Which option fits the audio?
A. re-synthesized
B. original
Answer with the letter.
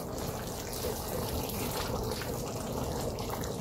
B